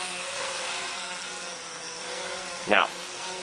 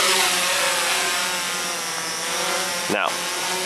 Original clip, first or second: second